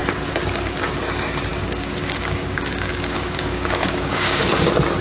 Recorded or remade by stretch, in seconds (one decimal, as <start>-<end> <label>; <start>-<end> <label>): 0.0-1.5 recorded; 1.5-4.5 remade; 4.5-5.0 recorded